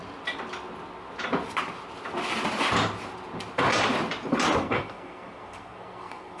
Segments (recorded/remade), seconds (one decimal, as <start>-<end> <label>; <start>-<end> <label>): 0.0-4.6 recorded; 4.6-6.4 remade